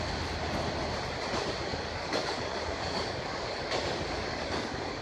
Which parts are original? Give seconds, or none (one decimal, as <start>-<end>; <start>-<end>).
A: 0.0-1.7